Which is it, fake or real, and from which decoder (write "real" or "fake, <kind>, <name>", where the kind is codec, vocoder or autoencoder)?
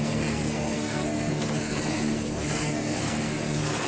fake, codec, SNAC